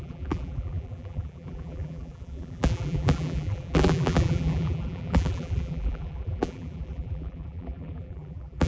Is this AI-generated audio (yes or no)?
yes